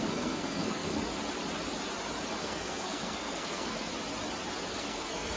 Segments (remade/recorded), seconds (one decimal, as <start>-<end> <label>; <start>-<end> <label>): 0.0-1.0 remade; 1.0-2.4 recorded; 2.4-3.9 remade; 3.9-4.7 recorded; 4.7-5.4 remade